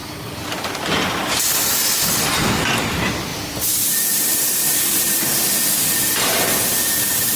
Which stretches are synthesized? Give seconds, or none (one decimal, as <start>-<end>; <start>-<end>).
0.0-0.5; 3.3-5.5